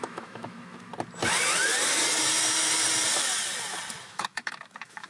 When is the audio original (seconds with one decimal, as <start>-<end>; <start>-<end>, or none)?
0.9-4.0